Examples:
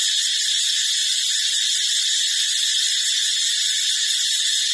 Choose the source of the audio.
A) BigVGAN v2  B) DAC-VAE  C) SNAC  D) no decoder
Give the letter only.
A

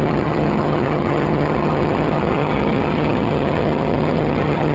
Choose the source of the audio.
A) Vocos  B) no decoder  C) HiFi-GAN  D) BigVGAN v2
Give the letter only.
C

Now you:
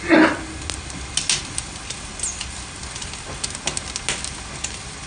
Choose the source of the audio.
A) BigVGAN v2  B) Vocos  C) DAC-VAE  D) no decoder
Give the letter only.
D